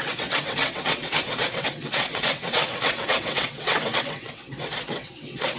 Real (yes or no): no